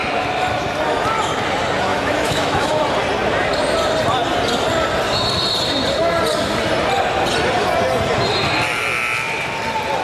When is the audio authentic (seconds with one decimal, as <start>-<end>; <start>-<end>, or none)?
0.0-1.9; 2.7-10.0